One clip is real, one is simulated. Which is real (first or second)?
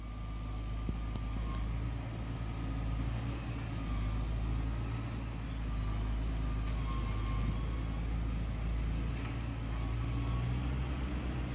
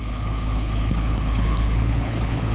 first